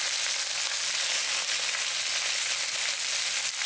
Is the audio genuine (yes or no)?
yes